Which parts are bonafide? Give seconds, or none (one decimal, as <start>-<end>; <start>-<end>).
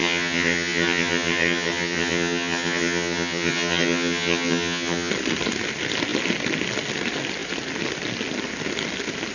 5.1-9.3